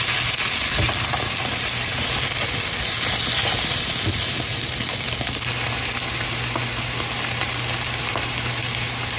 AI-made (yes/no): no